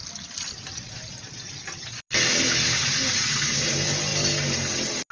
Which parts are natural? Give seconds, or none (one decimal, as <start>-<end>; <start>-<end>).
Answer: 0.0-5.1